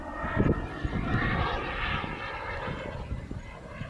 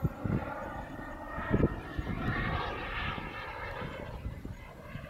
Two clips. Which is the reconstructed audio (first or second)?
second